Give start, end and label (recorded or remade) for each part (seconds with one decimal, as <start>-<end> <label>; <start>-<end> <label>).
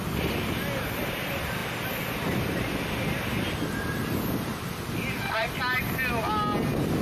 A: 0.0-7.0 recorded